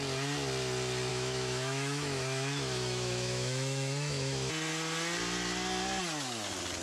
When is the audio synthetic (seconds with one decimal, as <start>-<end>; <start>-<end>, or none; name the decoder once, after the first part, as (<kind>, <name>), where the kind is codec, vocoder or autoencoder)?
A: 1.1-4.5 (autoencoder, DAC-VAE)